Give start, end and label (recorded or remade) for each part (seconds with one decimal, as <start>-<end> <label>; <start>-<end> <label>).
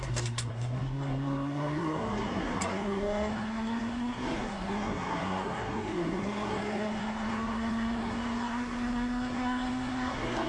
0.0-10.5 remade